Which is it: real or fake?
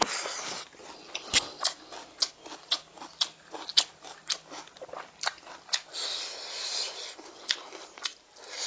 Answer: real